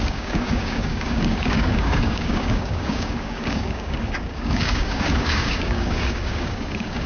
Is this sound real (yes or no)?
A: no